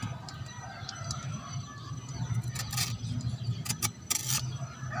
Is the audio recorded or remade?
recorded